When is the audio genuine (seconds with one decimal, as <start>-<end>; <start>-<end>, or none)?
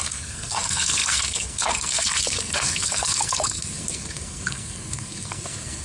none